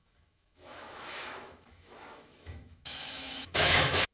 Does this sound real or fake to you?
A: fake